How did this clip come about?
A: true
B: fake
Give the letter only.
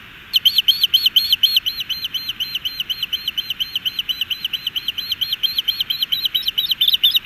A